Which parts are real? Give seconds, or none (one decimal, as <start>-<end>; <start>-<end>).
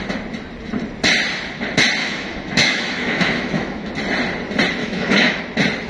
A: 0.0-2.0; 3.9-4.8; 5.4-5.9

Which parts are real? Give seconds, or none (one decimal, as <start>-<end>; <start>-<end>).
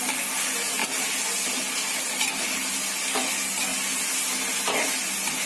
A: 0.0-5.5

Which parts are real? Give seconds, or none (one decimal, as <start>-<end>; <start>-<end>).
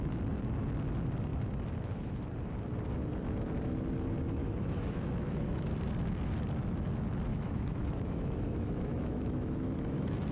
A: 0.0-4.4; 5.7-7.3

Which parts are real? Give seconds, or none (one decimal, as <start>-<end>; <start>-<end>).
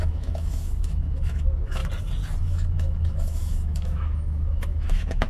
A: 1.8-2.4